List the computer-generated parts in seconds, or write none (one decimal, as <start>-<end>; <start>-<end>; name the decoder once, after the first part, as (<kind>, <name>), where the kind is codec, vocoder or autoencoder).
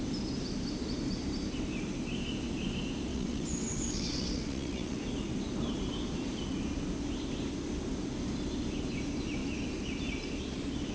3.1-5.0 (vocoder, WaveNeXt)